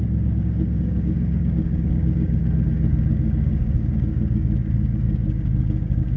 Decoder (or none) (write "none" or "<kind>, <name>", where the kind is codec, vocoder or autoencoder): codec, DAC